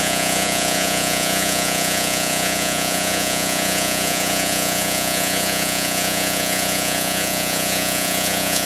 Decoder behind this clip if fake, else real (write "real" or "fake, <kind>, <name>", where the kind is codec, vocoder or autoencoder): fake, vocoder, Vocos